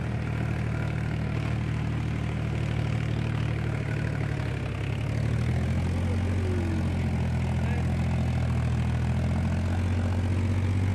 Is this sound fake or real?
real